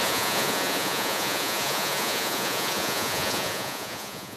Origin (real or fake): fake